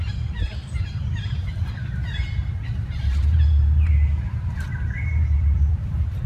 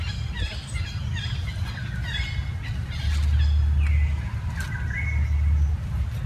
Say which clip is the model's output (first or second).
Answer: first